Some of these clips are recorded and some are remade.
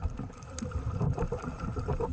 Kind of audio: remade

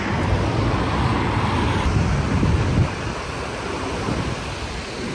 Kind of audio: remade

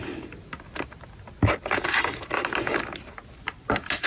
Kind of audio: recorded